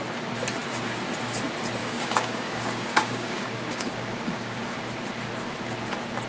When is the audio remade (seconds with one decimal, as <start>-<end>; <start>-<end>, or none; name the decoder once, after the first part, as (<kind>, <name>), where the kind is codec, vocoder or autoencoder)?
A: 1.8-4.8 (codec, DAC)